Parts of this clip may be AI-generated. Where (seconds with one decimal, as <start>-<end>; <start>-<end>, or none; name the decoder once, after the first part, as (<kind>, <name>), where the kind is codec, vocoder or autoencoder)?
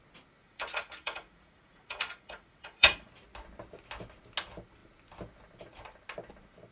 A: 0.4-3.1 (vocoder, Vocos)